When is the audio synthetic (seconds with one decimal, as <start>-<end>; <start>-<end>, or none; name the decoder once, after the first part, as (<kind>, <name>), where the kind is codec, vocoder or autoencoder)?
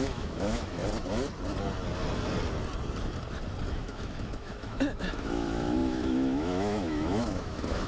0.0-0.8 (autoencoder, DAC-VAE); 3.7-7.9